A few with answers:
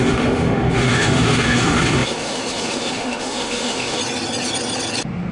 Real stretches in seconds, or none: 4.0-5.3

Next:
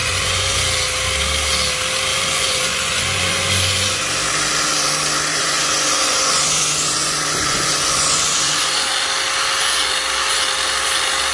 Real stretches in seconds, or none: 0.6-2.1; 4.0-5.3; 8.9-11.3

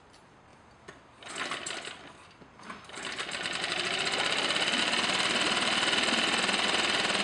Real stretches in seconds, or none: 0.0-7.2

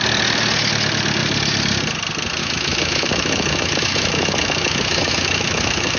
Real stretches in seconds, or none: 0.0-2.4

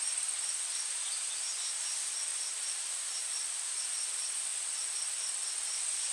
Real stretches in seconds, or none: 0.0-2.3; 3.9-6.1